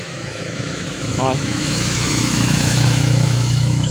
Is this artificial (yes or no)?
yes